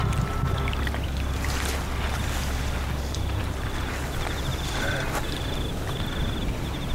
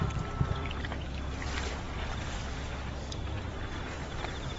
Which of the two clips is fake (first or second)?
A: second